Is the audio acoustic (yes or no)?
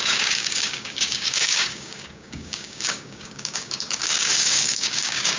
no